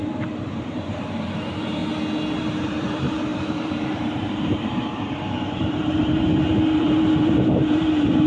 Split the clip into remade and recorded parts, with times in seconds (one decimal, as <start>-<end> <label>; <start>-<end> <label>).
0.0-1.8 remade; 1.8-2.4 recorded; 2.4-8.3 remade